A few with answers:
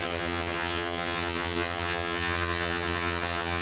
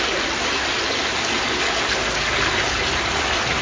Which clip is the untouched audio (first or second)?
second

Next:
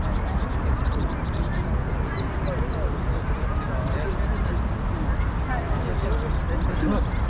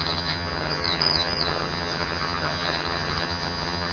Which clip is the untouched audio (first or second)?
first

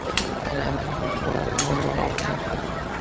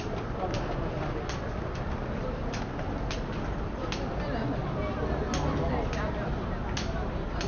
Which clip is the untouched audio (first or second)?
second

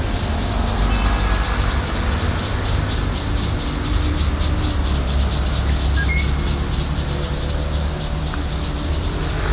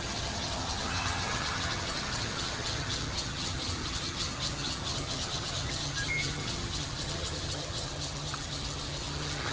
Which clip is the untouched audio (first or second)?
first